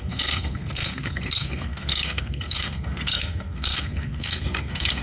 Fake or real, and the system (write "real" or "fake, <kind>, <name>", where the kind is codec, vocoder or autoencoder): fake, codec, SNAC